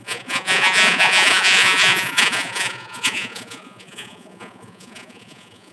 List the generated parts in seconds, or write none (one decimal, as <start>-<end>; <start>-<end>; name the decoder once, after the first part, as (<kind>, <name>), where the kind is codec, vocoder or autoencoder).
0.0-5.7 (vocoder, Vocos)